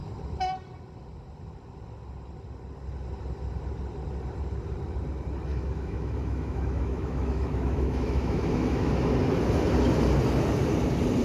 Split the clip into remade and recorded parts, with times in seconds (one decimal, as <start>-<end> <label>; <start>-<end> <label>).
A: 0.0-5.5 recorded; 5.5-8.9 remade; 8.9-11.2 recorded